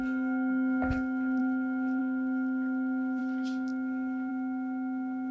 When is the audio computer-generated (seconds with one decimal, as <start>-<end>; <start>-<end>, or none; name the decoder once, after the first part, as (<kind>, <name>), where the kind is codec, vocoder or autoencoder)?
none